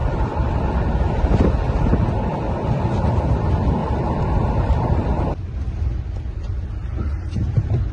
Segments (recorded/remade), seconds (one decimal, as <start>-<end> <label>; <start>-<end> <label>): 0.0-0.9 remade; 0.9-3.8 recorded; 3.8-4.5 remade; 4.5-7.9 recorded